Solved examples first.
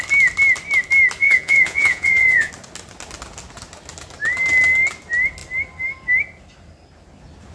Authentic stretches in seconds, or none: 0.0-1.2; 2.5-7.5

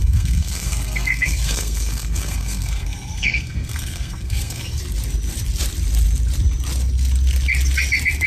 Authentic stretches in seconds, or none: 4.8-8.3

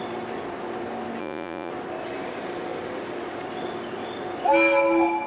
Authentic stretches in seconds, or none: 0.0-1.2; 1.7-5.3

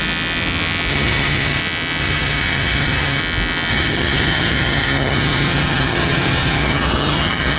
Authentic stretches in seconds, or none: 0.0-0.9; 1.6-2.0; 3.2-3.7

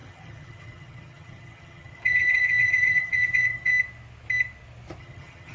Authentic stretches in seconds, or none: 3.7-5.0